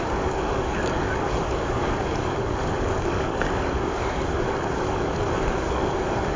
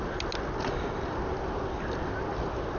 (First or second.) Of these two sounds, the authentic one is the second